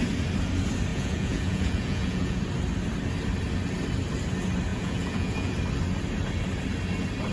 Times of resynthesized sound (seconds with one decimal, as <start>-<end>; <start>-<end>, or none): 0.9-2.4; 4.7-5.5